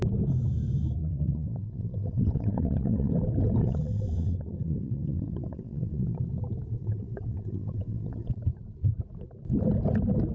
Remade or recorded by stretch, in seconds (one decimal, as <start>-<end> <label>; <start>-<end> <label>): 0.0-1.0 recorded; 1.0-3.1 remade; 3.1-3.6 recorded; 3.6-6.2 remade; 6.2-6.8 recorded; 6.8-8.4 remade; 8.4-10.3 recorded